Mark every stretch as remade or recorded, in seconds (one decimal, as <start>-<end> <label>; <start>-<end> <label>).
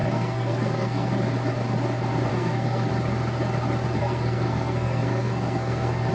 0.0-1.1 remade; 1.1-2.3 recorded; 2.3-2.9 remade; 2.9-4.0 recorded; 4.0-6.1 remade